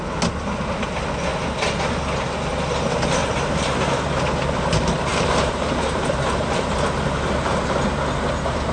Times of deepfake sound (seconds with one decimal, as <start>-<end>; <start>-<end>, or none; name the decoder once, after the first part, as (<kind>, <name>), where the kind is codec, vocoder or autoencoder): 3.2-4.0 (vocoder, BigVGAN v2); 5.1-7.8